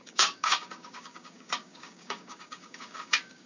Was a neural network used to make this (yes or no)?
yes